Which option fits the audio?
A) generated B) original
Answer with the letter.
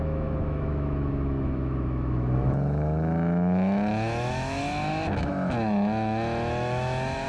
A